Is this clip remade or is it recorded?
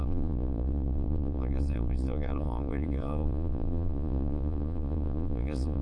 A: remade